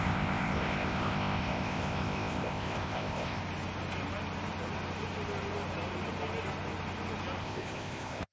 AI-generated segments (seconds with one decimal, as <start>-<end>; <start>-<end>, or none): 0.0-3.4; 7.4-8.3